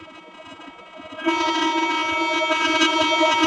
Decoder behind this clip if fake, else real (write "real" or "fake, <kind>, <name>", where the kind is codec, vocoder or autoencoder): fake, vocoder, Vocos